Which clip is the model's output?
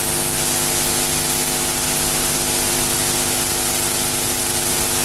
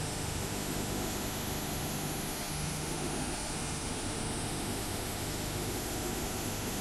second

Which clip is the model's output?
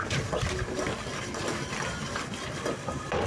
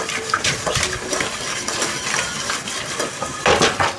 first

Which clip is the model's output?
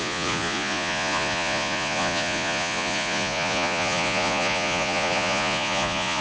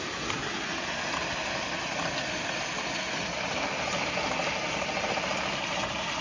first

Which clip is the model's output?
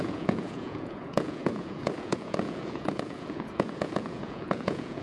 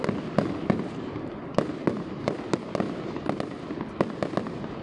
first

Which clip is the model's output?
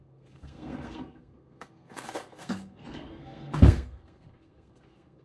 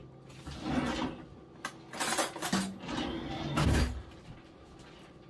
first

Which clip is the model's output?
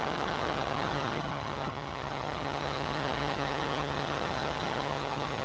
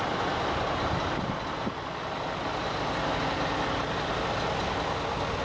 first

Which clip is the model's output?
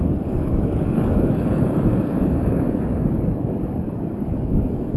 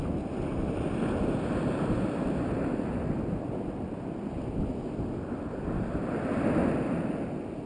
first